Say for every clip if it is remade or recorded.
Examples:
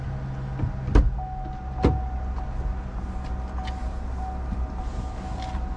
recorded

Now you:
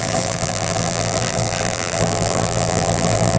remade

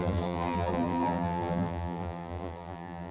remade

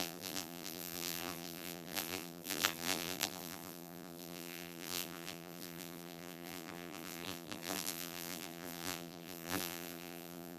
remade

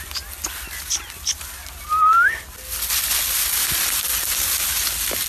recorded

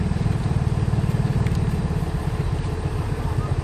recorded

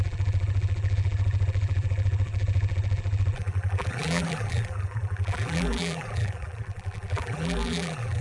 remade